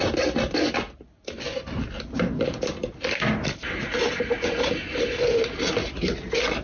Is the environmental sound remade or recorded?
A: recorded